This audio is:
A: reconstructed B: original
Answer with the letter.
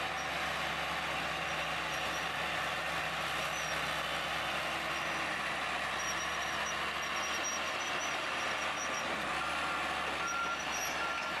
B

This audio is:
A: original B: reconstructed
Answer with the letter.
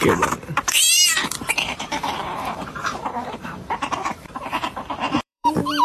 B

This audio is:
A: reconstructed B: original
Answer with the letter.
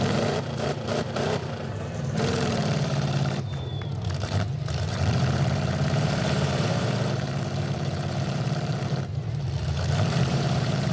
A